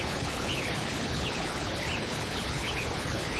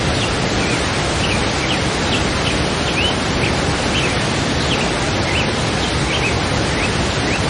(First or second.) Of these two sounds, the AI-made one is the first